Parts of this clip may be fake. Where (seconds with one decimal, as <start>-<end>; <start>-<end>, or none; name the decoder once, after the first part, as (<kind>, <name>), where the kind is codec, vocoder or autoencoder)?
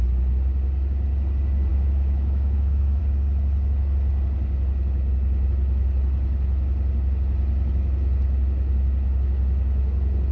1.7-3.0 (autoencoder, DAC-VAE)